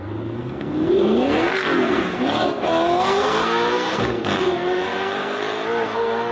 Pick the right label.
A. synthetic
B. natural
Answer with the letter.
A